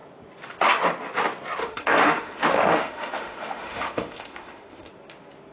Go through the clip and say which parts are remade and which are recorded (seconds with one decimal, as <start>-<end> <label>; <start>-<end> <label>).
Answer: 0.0-1.6 recorded; 1.6-4.9 remade; 4.9-5.5 recorded